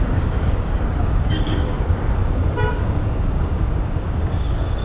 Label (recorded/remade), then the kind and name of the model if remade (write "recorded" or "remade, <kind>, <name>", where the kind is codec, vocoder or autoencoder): remade, codec, DAC